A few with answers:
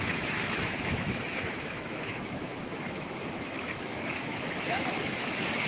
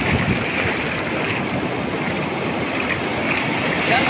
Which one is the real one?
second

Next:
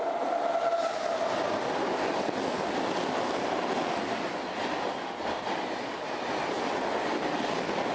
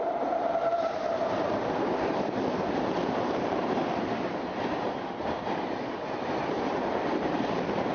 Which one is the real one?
first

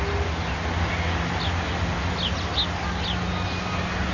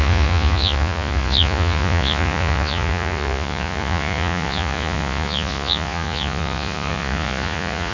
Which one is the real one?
first